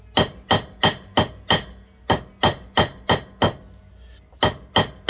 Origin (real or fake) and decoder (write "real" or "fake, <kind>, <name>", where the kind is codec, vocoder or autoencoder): real